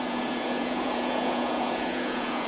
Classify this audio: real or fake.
fake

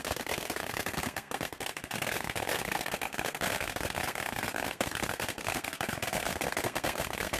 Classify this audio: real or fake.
fake